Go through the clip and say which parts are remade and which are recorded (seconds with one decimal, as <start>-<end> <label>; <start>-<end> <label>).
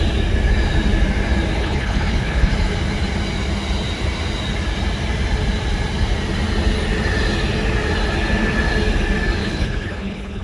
0.0-1.6 recorded; 1.6-2.5 remade; 2.5-9.4 recorded; 9.4-10.4 remade